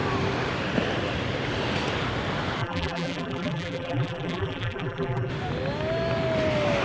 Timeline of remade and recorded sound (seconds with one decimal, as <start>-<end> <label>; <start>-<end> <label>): 0.0-2.6 recorded; 2.6-5.3 remade; 5.3-6.8 recorded